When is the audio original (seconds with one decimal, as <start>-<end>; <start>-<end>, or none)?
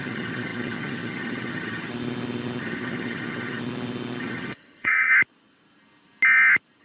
1.9-2.6; 3.6-4.2; 5.1-6.8